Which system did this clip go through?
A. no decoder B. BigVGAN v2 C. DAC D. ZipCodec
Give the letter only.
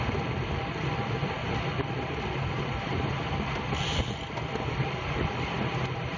A